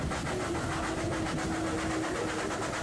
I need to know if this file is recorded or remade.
recorded